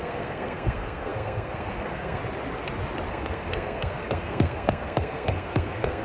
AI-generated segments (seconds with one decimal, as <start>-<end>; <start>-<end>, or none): 0.0-2.2; 3.1-6.0